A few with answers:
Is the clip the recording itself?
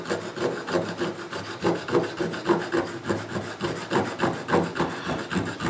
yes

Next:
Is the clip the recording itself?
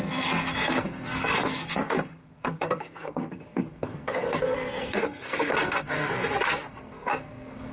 no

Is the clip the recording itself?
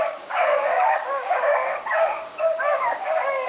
no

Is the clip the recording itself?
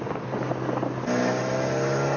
yes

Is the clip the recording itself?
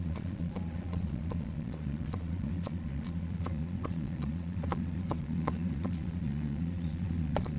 no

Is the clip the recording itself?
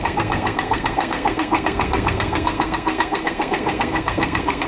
no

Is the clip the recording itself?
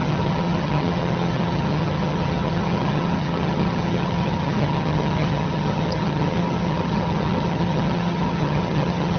no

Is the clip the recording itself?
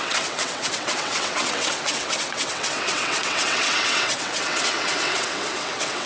no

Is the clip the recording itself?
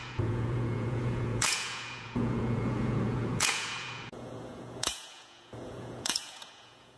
no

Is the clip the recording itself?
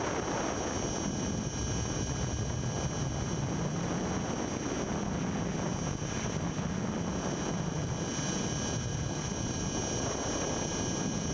yes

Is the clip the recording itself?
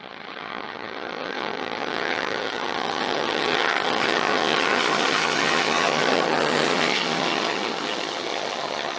no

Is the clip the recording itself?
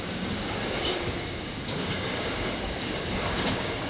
no